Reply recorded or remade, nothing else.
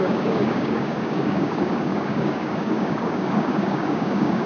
remade